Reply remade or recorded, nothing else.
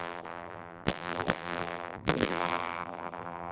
remade